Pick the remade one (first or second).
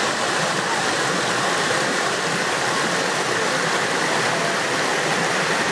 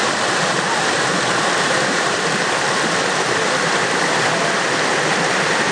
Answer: second